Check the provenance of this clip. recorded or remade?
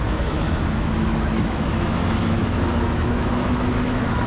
remade